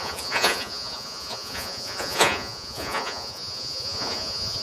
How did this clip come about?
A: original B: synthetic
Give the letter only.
B